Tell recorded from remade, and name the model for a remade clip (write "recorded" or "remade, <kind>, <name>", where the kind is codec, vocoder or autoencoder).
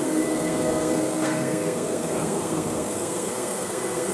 remade, codec, SNAC